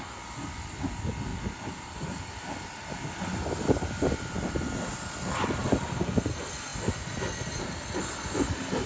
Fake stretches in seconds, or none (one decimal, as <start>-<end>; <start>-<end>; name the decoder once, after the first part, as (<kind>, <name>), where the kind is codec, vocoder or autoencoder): 1.3-3.1 (vocoder, BigVGAN v2); 5.6-6.2